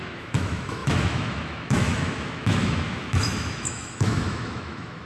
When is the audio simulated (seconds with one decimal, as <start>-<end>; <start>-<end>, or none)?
0.0-5.1